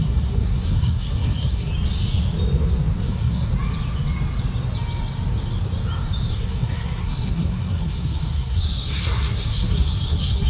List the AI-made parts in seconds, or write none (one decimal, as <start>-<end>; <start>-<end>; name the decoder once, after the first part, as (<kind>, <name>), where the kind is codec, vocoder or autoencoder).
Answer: 0.0-1.7 (codec, SNAC); 3.0-3.5; 6.3-10.5